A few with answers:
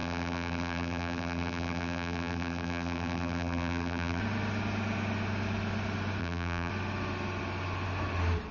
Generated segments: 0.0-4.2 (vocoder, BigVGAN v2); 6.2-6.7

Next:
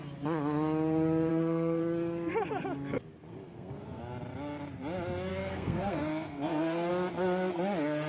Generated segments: 1.3-1.8 (codec, SNAC); 3.3-4.0; 5.3-6.9

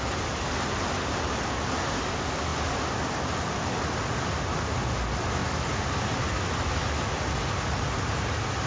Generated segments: none

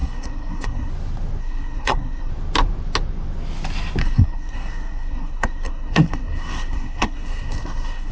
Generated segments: 0.0-0.9 (codec, SNAC); 1.4-2.3; 4.0-8.1